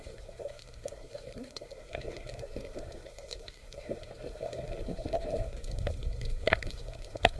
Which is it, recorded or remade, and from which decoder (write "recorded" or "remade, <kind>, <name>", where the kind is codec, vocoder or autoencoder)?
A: remade, codec, SNAC